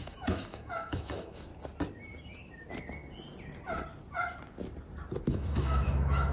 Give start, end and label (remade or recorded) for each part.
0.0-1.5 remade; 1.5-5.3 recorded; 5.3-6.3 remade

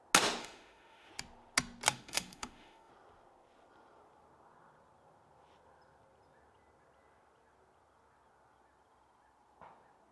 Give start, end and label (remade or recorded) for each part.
0.0-0.4 recorded; 0.4-1.1 remade; 1.1-1.9 recorded; 1.9-2.9 remade; 2.9-10.1 recorded

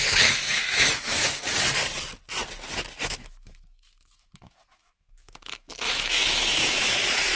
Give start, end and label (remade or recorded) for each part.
0.0-1.4 remade; 1.4-3.0 recorded; 3.0-7.4 remade

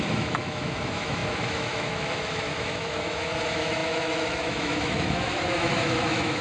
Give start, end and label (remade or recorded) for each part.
0.0-6.4 remade

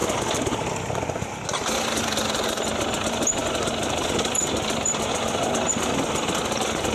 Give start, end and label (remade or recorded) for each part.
0.0-6.9 recorded

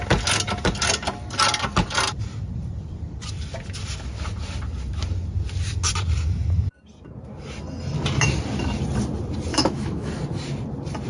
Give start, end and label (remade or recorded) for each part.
0.0-9.5 recorded; 9.5-10.1 remade; 10.1-11.1 recorded